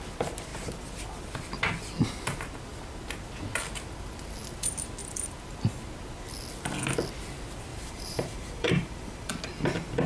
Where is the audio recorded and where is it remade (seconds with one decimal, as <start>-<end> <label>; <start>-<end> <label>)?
0.0-7.7 recorded; 7.7-9.3 remade; 9.3-10.1 recorded